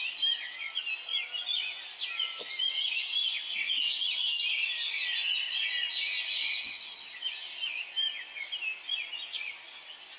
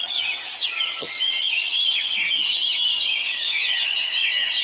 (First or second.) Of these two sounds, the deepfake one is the second